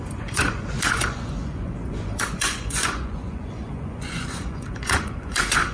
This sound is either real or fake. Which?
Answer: fake